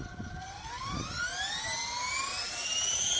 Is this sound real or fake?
real